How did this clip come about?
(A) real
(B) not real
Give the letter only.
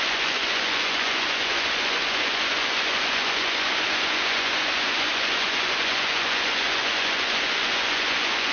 B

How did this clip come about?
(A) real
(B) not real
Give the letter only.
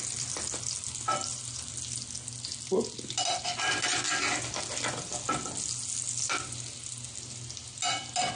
A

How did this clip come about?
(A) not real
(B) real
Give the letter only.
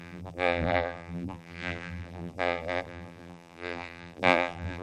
A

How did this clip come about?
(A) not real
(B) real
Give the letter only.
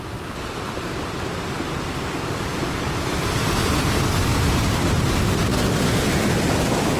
B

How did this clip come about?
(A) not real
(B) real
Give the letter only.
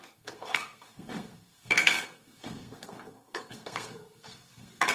A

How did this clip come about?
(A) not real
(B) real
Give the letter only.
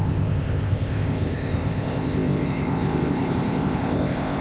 A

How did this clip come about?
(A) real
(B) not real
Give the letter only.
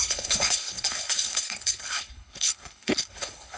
B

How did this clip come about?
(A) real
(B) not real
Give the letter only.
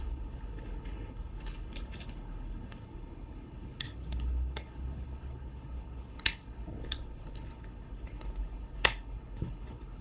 B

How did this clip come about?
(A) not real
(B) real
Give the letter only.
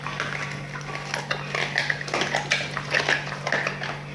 B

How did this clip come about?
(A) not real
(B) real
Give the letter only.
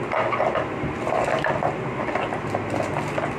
B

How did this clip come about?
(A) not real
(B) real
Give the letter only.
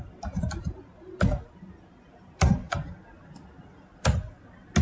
B